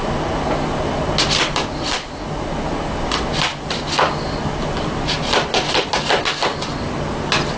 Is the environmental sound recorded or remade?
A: recorded